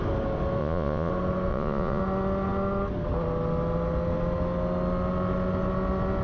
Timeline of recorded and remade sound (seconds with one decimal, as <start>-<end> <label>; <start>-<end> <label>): 0.0-0.6 recorded; 0.6-1.1 remade; 1.1-1.5 recorded; 1.5-2.0 remade; 2.0-6.2 recorded